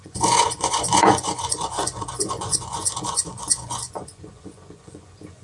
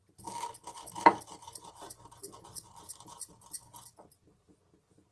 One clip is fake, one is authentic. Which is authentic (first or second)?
second